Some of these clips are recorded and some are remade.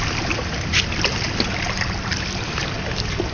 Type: recorded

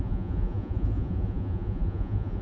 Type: remade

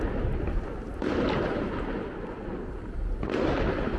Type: recorded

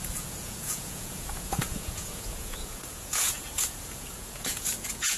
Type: remade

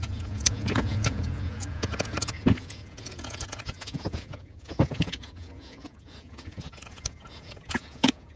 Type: remade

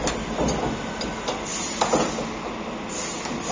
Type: recorded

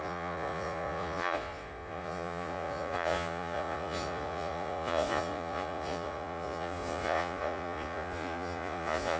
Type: remade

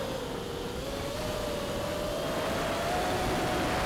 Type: recorded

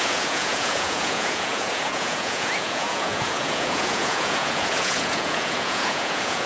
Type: remade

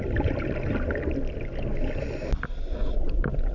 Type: recorded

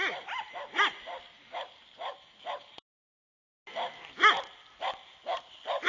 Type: recorded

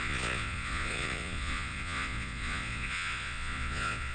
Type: remade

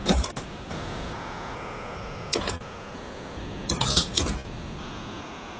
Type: remade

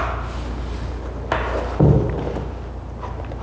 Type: recorded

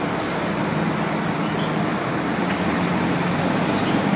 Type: recorded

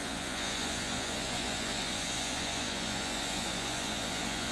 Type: remade